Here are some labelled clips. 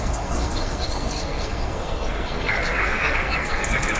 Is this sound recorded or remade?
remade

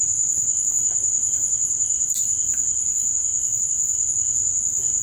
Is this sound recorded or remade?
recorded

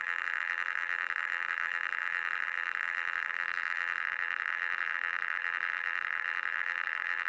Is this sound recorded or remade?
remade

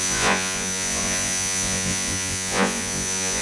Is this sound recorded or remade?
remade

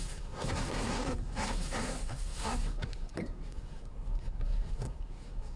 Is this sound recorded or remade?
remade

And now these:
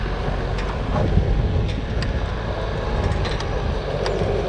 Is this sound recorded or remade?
recorded